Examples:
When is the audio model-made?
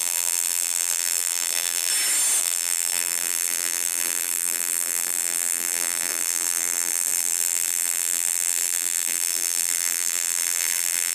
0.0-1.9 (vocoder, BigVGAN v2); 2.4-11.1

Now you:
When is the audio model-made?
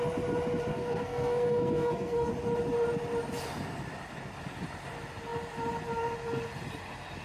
0.7-2.3 (codec, SNAC)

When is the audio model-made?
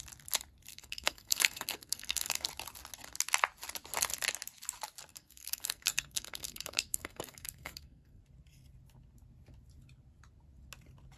0.7-2.5 (codec, SNAC); 5.1-8.2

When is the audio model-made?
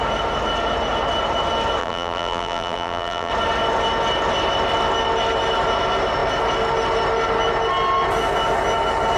1.8-3.3 (vocoder, BigVGAN v2)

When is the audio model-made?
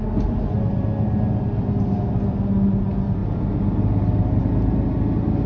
none